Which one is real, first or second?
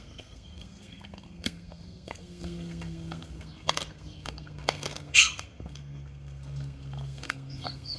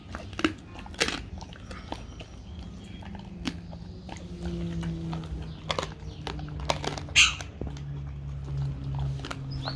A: second